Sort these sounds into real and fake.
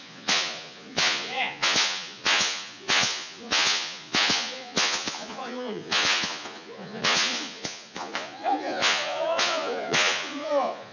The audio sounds fake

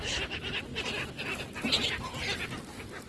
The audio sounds real